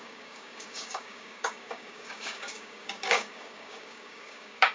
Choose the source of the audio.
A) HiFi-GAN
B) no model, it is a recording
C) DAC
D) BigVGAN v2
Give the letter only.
C